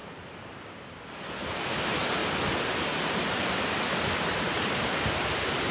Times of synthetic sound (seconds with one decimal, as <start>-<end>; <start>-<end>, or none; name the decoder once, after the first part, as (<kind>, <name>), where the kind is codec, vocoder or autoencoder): none